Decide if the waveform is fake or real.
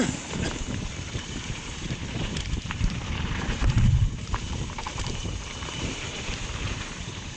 fake